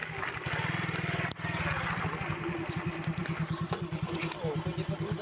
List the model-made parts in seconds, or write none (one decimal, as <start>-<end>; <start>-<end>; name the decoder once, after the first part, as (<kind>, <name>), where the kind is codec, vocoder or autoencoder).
3.2-4.4 (vocoder, BigVGAN v2)